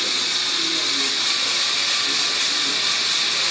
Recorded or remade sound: recorded